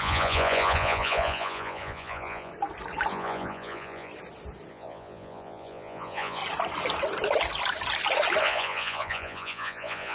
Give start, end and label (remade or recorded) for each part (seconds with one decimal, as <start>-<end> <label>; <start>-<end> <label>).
0.0-2.5 remade; 2.5-3.1 recorded; 3.1-4.1 remade; 4.1-4.7 recorded; 4.7-6.4 remade; 6.4-8.4 recorded; 8.4-10.1 remade